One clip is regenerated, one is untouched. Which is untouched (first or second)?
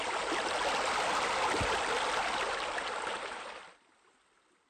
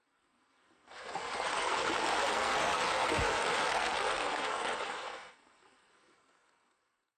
first